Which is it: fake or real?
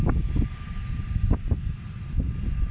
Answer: real